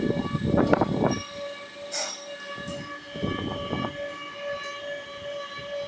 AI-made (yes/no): no